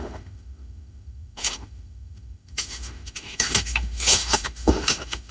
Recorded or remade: remade